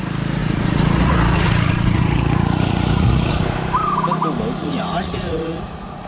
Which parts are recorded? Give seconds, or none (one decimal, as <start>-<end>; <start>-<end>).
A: 0.0-0.4; 3.3-4.6